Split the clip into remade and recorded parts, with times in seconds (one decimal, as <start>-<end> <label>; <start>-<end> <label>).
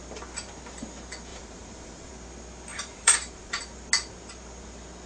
0.0-1.3 recorded; 1.3-2.1 remade; 2.1-2.7 recorded; 2.7-3.6 remade; 3.6-5.1 recorded